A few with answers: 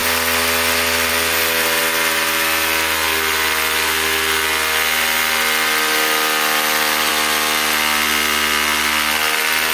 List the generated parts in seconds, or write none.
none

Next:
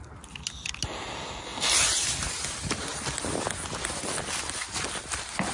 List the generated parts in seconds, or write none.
none

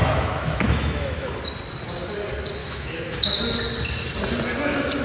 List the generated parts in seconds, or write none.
0.0-1.3 (autoencoder, DAC-VAE); 2.6-3.4